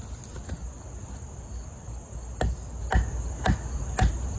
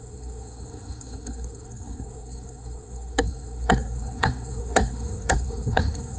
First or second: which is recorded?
first